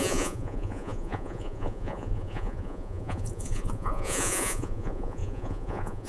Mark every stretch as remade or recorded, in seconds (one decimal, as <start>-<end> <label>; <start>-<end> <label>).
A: 0.0-6.1 remade